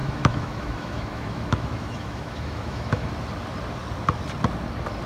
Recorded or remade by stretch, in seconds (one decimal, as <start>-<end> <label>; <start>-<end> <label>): 0.0-3.1 remade; 3.1-5.1 recorded